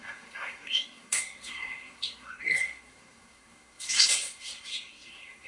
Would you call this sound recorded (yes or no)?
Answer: no